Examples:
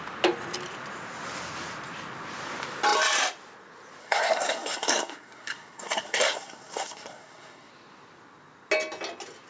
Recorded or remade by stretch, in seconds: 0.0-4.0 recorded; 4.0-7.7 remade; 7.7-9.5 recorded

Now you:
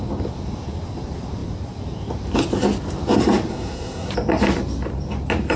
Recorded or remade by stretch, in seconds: 0.0-3.5 recorded; 3.5-4.1 remade; 4.1-5.6 recorded